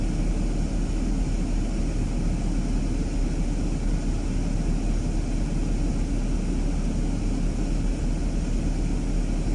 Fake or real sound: real